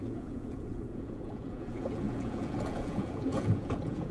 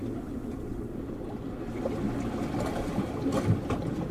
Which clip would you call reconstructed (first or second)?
first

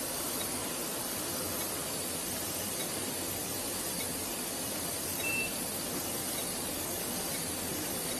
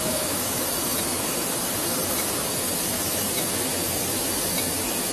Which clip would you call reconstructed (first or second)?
second